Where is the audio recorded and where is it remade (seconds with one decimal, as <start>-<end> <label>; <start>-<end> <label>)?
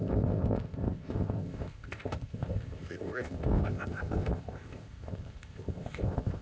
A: 0.0-6.4 remade